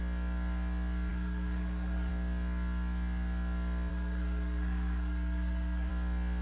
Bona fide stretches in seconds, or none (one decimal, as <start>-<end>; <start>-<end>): 0.0-1.1; 2.1-3.9; 5.9-6.4